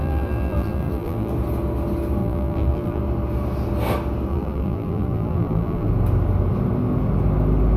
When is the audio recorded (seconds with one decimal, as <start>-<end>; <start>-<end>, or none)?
1.3-2.2; 3.0-4.3; 5.9-7.8